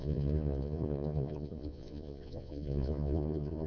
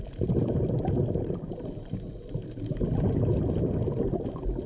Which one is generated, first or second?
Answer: first